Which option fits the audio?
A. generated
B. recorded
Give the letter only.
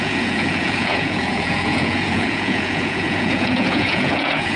A